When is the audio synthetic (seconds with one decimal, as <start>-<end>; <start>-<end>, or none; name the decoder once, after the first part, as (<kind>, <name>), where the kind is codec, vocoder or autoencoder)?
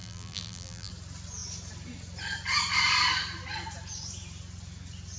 0.0-0.9 (vocoder, BigVGAN v2)